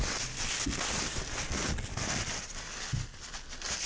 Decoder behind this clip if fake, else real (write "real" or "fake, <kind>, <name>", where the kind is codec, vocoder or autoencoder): real